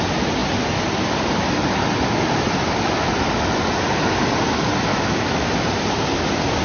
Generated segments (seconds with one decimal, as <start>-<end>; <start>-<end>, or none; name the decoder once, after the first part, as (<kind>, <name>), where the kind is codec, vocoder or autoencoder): 4.9-5.5 (autoencoder, DAC-VAE)